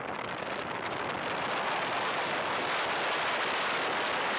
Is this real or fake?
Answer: real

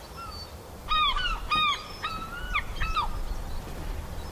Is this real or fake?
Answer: fake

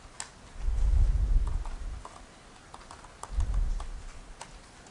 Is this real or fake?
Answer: real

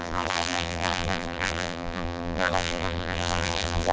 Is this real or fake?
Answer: fake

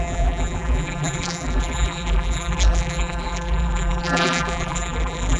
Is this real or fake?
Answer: fake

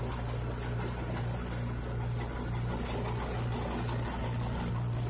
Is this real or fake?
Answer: real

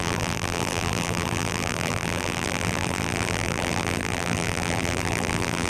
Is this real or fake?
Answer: fake